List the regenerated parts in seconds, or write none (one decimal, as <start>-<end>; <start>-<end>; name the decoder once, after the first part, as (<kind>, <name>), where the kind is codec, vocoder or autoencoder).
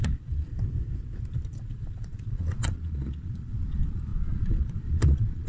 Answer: 0.0-0.5 (vocoder, Vocos); 1.6-5.5